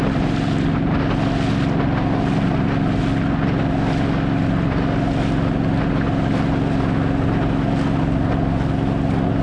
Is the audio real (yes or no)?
yes